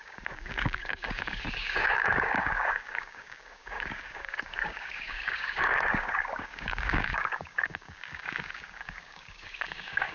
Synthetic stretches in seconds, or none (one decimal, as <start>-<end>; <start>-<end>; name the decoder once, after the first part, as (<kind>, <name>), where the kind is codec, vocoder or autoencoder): 0.0-10.1 (codec, DAC)